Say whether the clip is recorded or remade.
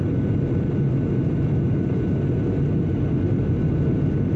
recorded